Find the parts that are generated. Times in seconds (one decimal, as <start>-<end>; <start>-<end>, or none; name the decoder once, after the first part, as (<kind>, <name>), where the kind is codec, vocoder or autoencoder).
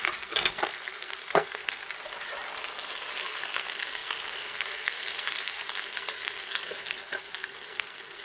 0.0-1.8 (codec, SNAC); 3.2-8.2